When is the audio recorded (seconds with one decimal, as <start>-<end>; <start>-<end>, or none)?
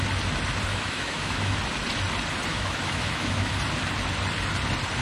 0.0-0.7; 1.6-2.5; 3.5-5.0